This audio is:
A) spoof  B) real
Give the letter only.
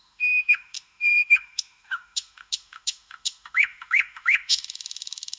A